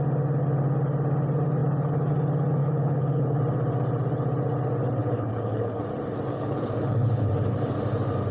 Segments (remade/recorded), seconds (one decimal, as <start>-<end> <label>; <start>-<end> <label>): 0.0-2.6 recorded; 2.6-3.4 remade; 3.4-5.0 recorded; 5.0-5.8 remade; 5.8-6.3 recorded; 6.3-7.3 remade; 7.3-8.3 recorded